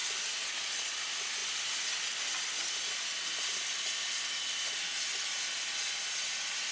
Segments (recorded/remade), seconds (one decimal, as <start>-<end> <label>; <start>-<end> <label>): 0.0-6.7 recorded

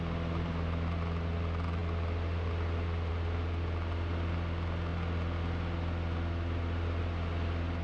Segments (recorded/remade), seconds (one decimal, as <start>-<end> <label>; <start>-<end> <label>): 0.0-7.8 recorded

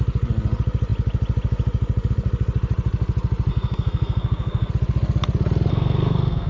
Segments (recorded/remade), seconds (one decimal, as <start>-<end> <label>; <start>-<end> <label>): 0.0-3.5 recorded; 3.5-4.7 remade; 4.7-5.7 recorded; 5.7-6.5 remade

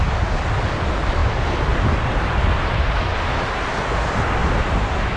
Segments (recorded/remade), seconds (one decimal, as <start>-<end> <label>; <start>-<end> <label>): 0.0-5.2 recorded

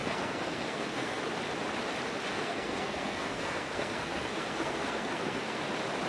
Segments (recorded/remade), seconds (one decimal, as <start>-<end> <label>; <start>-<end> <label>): 0.0-1.2 remade; 1.2-2.3 recorded; 2.3-5.6 remade; 5.6-6.1 recorded

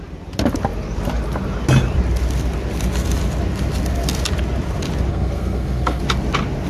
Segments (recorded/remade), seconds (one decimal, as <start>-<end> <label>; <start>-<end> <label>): 0.0-5.1 recorded; 5.1-6.0 remade; 6.0-6.7 recorded